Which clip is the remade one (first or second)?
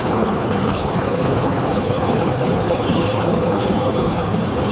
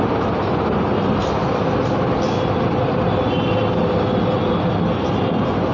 first